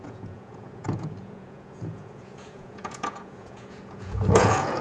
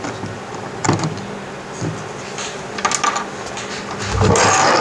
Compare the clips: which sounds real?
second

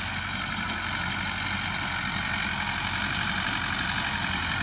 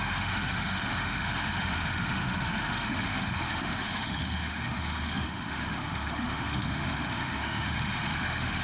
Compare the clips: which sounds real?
first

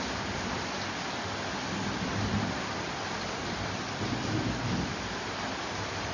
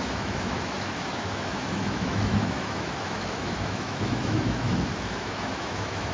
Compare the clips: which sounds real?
first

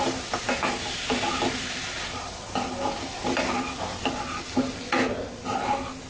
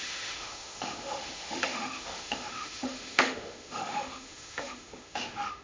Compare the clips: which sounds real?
first